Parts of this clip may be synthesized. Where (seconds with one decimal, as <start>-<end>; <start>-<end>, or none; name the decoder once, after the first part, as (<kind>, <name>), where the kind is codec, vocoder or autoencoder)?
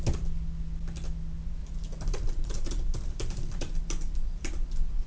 1.6-5.1 (vocoder, BigVGAN v2)